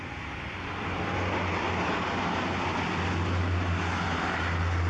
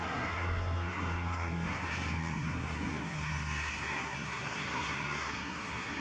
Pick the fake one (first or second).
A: second